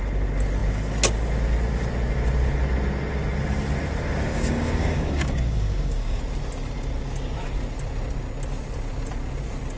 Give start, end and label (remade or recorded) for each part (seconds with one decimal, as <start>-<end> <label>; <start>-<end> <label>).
0.0-4.3 recorded; 4.3-6.2 remade; 6.2-9.8 recorded